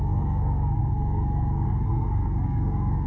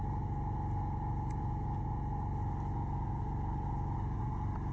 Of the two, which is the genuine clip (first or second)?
second